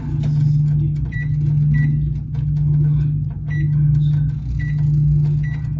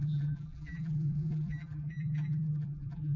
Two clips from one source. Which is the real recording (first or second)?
first